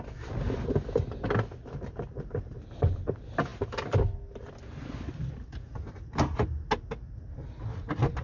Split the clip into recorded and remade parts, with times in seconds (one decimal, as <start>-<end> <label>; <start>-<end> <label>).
0.0-8.2 recorded